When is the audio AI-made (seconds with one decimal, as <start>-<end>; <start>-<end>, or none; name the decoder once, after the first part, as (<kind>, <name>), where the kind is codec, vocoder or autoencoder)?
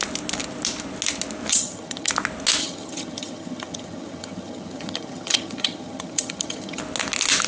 1.5-2.1 (vocoder, HiFi-GAN); 2.6-6.8